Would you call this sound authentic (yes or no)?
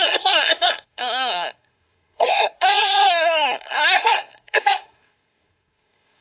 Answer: no